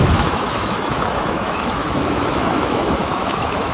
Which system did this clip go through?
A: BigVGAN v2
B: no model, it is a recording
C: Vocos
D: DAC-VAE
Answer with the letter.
D